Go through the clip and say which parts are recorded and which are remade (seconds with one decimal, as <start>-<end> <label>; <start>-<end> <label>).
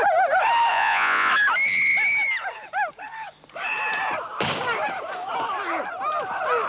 0.0-0.7 recorded; 0.7-1.3 remade; 1.3-6.7 recorded